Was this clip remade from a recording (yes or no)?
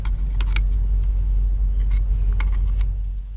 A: no